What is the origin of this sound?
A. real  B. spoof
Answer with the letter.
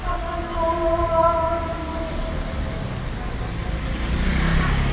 A